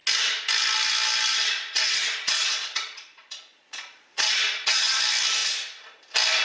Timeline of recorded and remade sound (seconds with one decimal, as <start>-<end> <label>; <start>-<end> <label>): 0.0-1.3 recorded; 1.3-5.0 remade; 5.0-6.4 recorded